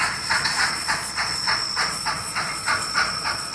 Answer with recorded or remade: remade